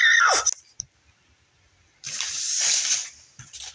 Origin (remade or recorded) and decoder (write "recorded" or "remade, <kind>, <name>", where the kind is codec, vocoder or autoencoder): recorded